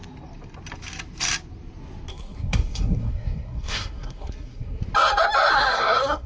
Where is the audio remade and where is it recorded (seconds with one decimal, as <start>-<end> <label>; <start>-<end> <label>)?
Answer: 0.0-2.1 recorded; 2.1-4.8 remade; 4.8-5.5 recorded; 5.5-6.3 remade